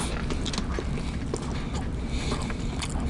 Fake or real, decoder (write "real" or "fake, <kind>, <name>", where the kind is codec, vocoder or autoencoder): real